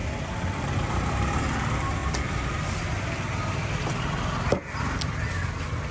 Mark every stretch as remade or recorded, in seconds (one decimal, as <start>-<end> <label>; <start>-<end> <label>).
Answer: 0.0-5.9 recorded